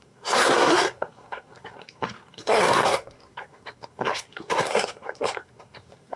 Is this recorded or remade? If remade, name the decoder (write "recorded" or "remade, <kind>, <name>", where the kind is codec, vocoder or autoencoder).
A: remade, codec, SNAC